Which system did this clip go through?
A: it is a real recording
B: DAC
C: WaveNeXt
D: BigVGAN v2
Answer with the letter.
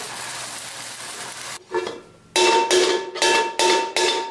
A